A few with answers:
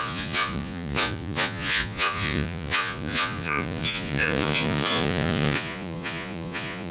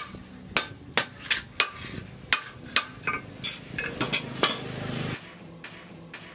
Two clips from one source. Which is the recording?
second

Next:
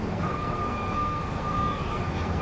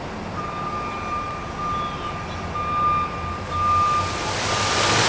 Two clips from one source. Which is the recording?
second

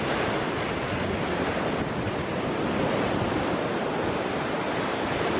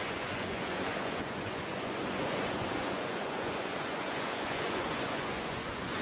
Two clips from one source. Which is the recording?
first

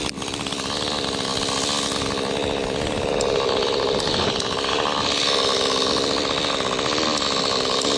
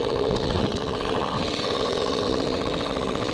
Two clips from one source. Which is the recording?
first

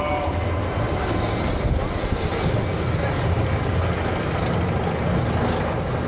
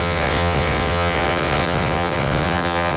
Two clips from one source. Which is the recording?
first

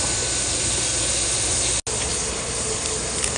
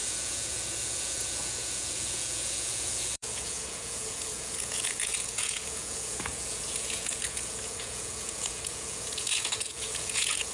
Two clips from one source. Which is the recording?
first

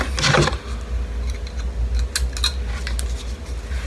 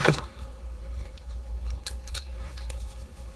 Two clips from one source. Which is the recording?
first